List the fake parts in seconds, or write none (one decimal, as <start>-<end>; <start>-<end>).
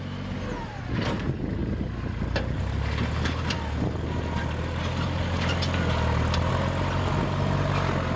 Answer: none